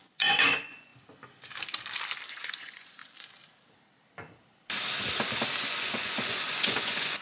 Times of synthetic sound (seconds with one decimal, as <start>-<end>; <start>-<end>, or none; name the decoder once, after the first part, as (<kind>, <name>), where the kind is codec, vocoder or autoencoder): 0.0-0.9 (vocoder, Vocos); 2.3-3.0; 5.6-7.2

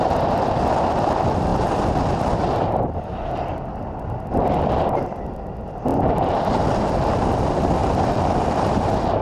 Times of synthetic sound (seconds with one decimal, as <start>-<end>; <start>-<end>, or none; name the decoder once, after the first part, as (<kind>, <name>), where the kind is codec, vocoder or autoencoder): 5.9-7.3 (vocoder, BigVGAN v2); 7.8-9.2

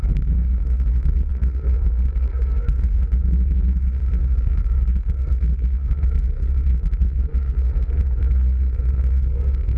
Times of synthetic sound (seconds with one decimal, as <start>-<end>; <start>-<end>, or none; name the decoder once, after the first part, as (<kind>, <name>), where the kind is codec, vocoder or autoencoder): 0.0-9.8 (codec, SNAC)

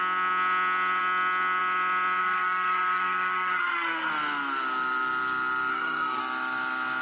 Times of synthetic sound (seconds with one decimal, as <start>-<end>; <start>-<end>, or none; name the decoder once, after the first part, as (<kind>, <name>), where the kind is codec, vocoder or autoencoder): 2.2-4.1 (codec, SNAC); 5.7-6.2

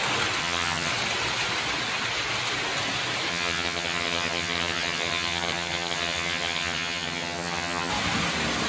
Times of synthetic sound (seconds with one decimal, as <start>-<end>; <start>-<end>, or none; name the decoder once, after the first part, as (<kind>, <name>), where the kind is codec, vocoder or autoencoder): 0.4-0.9 (vocoder, HiFi-GAN); 3.3-7.9

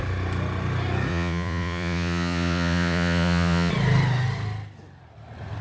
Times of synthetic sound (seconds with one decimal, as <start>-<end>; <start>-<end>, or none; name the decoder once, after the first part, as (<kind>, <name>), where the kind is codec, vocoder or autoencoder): 1.1-3.7 (vocoder, Vocos)

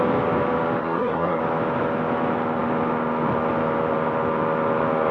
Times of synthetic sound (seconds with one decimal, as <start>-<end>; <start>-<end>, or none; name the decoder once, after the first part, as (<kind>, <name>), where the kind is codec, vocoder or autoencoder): 0.8-1.4 (codec, SNAC)

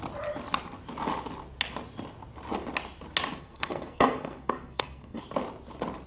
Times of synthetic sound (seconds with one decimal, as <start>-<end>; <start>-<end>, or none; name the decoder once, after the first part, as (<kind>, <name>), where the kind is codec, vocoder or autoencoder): 3.4-5.2 (codec, SNAC)